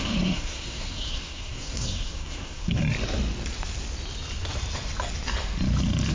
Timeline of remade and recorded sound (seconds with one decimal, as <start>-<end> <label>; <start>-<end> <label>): 0.0-2.8 remade; 2.8-6.1 recorded